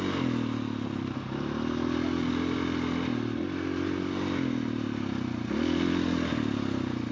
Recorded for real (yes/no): yes